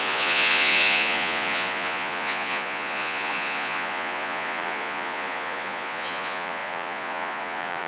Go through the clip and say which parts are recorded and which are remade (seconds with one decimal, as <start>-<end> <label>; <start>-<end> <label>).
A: 0.0-7.9 remade